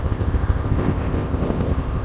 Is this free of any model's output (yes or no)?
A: no